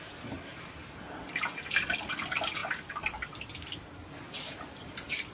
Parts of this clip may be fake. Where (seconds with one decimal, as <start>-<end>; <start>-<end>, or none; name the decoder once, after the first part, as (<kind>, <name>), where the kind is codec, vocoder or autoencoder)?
none